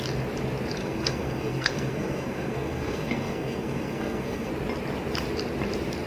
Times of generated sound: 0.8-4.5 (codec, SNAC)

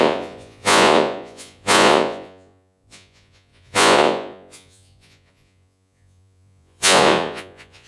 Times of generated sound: 0.0-7.9 (vocoder, Vocos)

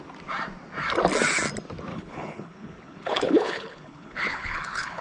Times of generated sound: 1.9-5.0 (codec, HILCodec)

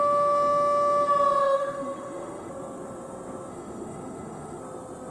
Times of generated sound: 1.4-2.5 (autoencoder, DAC-VAE); 3.5-4.6